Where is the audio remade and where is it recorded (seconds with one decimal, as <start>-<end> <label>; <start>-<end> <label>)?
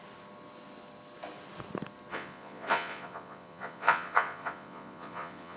0.0-2.1 recorded; 2.1-5.6 remade